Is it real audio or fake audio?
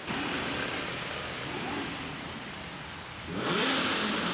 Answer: real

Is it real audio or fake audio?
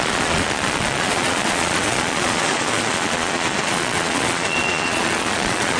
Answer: fake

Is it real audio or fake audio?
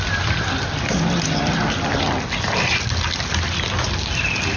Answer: real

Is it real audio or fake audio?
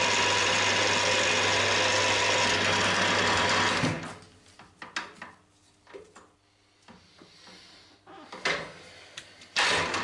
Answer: real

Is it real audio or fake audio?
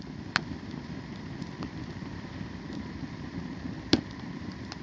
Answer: real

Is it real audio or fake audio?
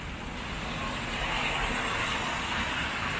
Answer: real